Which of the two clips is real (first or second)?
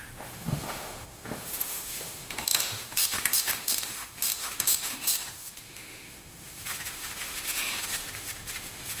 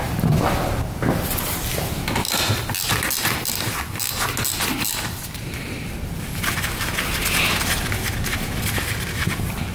second